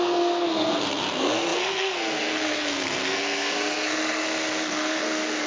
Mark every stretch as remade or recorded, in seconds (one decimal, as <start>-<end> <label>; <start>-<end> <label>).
0.0-5.5 remade

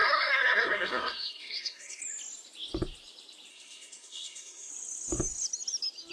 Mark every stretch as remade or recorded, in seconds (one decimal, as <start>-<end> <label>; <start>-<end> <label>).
0.0-2.0 remade; 2.0-3.5 recorded; 3.5-4.7 remade; 4.7-6.1 recorded

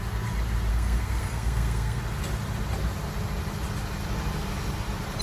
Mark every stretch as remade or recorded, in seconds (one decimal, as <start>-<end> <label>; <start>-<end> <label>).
0.0-0.7 recorded; 0.7-2.0 remade; 2.0-5.2 recorded

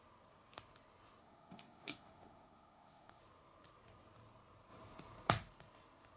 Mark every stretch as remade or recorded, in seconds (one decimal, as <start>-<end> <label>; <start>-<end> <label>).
0.0-1.2 recorded; 1.2-3.2 remade; 3.2-6.2 recorded

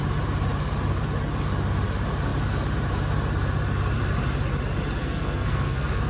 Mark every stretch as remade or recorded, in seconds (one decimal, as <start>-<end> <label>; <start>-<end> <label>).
0.0-5.0 recorded; 5.0-6.1 remade

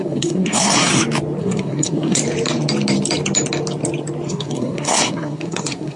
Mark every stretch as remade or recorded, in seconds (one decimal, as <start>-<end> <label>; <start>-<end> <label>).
0.0-0.9 remade; 0.9-1.4 recorded; 1.4-2.2 remade; 2.2-4.3 recorded; 4.3-6.0 remade

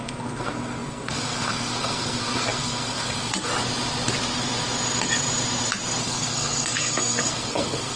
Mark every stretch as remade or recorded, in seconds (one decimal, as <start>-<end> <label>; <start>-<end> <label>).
0.0-3.5 remade; 3.5-6.0 recorded; 6.0-8.0 remade

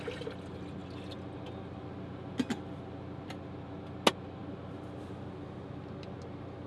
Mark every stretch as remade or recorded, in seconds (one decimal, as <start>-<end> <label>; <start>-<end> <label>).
0.0-6.7 recorded